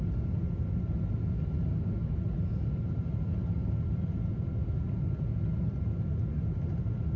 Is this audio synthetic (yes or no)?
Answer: no